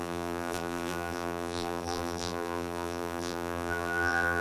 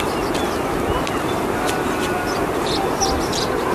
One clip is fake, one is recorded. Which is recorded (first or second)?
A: second